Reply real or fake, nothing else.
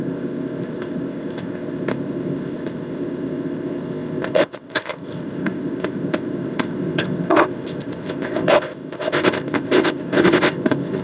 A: fake